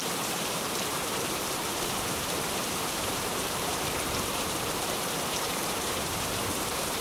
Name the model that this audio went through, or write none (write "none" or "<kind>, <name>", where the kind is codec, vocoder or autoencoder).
vocoder, BigVGAN v2